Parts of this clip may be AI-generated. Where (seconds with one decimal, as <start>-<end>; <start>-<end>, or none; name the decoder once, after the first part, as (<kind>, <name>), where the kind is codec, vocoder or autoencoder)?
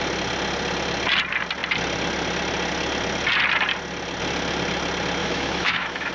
5.2-6.1 (autoencoder, DAC-VAE)